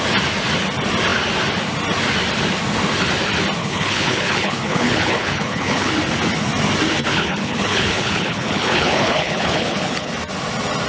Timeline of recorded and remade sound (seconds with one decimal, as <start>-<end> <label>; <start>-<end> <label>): 0.0-3.6 recorded; 3.6-5.9 remade; 5.9-7.1 recorded; 7.1-10.1 remade; 10.1-10.9 recorded